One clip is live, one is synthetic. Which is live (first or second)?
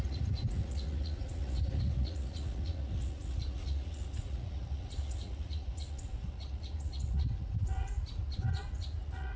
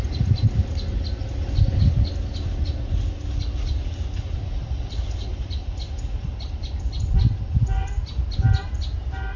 second